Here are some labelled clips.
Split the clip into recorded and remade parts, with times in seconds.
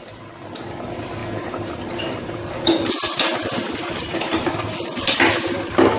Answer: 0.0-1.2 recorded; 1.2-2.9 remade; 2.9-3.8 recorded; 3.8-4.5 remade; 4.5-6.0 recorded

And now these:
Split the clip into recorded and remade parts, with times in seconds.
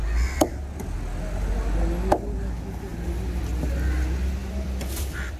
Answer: 0.0-4.4 recorded; 4.4-5.4 remade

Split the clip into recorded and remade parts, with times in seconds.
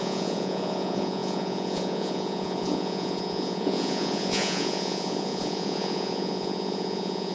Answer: 0.0-7.3 remade